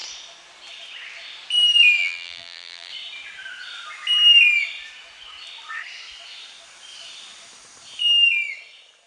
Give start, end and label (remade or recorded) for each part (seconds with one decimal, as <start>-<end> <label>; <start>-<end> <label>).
0.0-2.0 recorded; 2.0-2.9 remade; 2.9-9.1 recorded